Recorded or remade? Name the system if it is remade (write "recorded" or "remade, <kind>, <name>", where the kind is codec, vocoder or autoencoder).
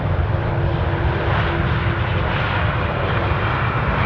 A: recorded